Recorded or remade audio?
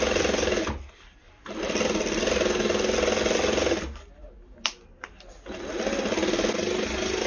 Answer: recorded